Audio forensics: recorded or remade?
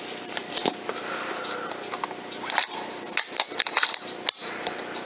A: recorded